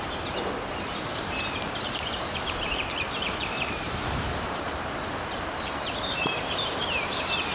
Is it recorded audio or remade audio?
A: remade